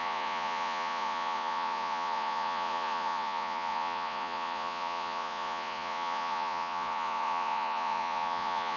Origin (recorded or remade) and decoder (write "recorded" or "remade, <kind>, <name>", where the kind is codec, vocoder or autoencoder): remade, vocoder, Vocos